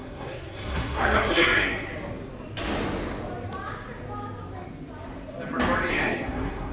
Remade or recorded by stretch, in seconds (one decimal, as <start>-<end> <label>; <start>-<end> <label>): 0.0-1.9 remade; 1.9-5.9 recorded; 5.9-6.7 remade

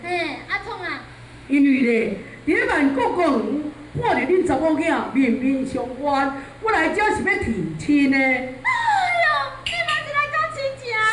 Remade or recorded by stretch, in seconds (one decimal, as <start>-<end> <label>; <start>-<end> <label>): 0.0-1.1 recorded; 1.1-2.2 remade; 2.2-11.1 recorded